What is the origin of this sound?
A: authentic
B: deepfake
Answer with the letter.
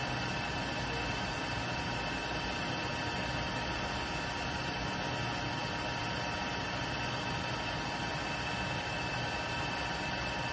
A